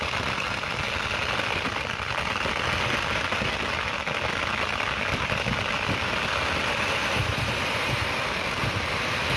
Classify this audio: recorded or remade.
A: recorded